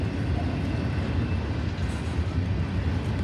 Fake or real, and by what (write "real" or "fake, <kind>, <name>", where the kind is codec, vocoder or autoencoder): real